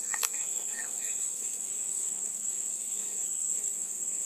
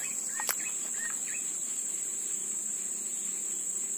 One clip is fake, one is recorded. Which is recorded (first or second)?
second